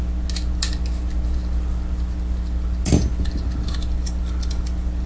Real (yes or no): yes